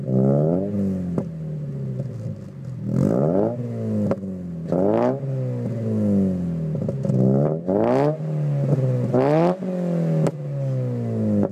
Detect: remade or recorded recorded